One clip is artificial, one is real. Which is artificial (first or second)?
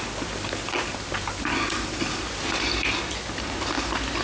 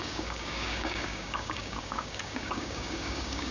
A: second